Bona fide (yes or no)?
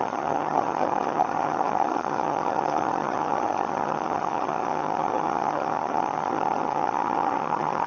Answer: no